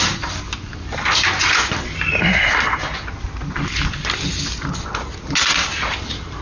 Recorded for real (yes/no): yes